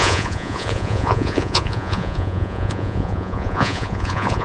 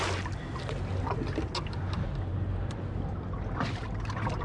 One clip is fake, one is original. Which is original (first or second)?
second